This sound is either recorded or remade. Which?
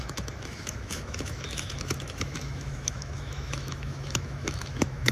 remade